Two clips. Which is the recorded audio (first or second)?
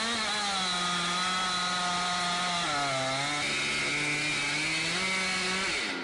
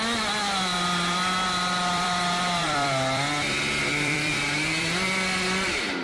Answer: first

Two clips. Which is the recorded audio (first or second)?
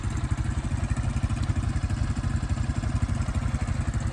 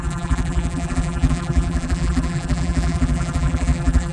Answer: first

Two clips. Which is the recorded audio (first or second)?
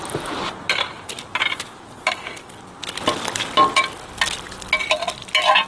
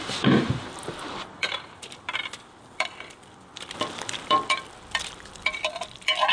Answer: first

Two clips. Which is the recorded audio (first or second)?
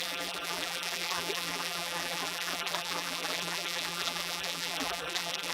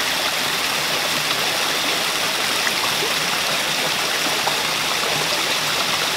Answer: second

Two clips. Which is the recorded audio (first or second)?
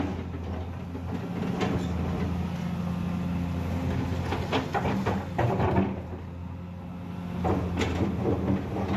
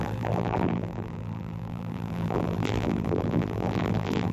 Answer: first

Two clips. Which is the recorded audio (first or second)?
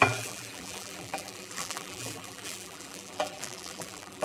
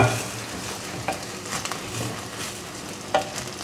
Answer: second